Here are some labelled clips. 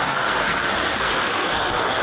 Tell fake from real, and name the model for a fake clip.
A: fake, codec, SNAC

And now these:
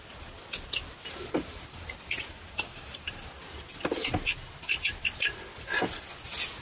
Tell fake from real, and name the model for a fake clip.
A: real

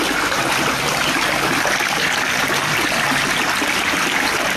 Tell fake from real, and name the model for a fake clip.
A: real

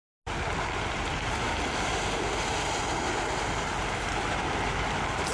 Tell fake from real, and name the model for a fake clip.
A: real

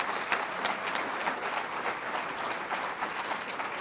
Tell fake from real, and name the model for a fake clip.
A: real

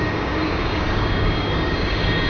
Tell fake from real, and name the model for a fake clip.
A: fake, codec, DAC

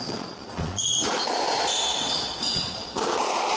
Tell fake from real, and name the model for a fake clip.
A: fake, vocoder, Vocos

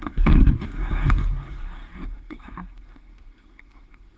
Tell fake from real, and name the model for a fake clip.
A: fake, codec, SNAC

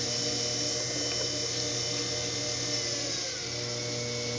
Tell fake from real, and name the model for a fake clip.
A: real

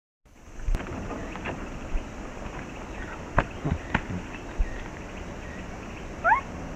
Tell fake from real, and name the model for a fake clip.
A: real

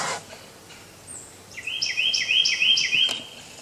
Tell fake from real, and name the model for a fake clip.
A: real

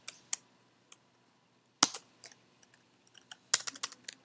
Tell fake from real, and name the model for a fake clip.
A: real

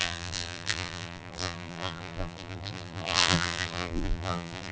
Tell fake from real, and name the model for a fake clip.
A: fake, vocoder, BigVGAN v2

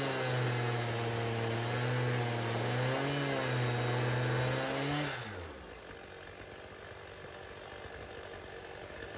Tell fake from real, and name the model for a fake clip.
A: real